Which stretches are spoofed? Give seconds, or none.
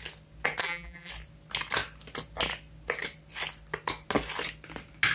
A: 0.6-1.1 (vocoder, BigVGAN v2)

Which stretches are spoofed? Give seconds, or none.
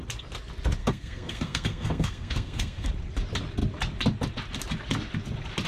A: 0.8-2.9 (codec, SNAC)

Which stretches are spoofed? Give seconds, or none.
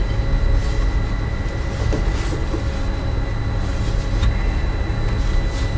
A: none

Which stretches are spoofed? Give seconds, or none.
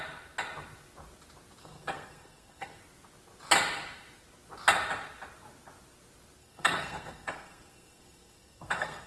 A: 1.6-2.8 (codec, SNAC); 6.4-9.1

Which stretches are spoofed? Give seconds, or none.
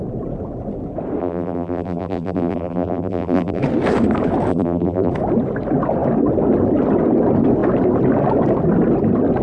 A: 1.2-3.6 (vocoder, BigVGAN v2); 4.5-5.1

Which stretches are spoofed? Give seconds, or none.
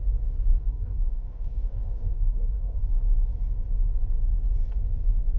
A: 0.5-3.0 (codec, DAC)